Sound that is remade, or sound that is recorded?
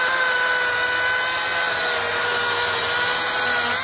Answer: remade